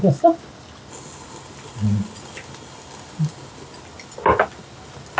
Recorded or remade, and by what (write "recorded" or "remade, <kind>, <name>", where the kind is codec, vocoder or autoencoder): recorded